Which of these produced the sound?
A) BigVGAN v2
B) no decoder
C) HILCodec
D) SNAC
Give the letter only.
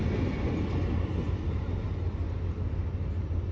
B